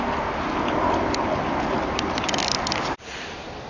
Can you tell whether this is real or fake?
real